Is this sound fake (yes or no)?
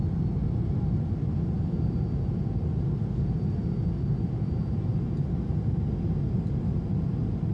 no